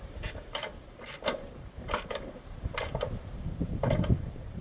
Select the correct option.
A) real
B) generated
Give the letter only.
B